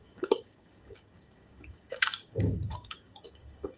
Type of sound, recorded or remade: remade